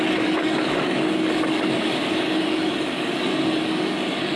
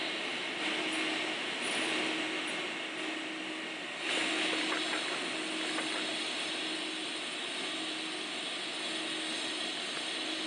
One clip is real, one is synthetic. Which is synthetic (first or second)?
first